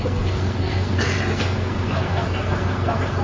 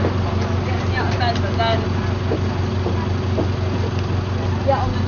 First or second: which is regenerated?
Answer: first